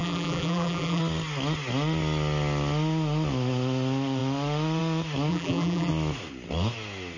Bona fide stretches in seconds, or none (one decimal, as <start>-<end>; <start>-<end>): 1.0-5.3; 5.9-7.2